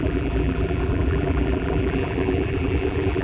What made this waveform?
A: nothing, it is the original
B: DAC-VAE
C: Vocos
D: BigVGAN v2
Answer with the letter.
D